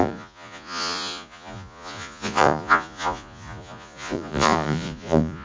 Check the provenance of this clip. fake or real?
fake